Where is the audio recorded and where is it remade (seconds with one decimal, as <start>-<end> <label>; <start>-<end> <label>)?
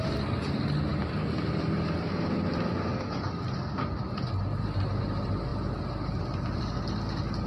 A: 0.0-7.5 recorded